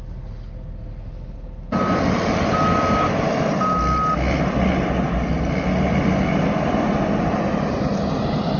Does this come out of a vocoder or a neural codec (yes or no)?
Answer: no